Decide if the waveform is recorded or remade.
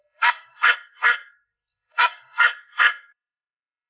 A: remade